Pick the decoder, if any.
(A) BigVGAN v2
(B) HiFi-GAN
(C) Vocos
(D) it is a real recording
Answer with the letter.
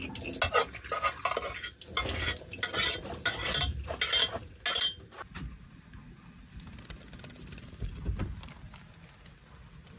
D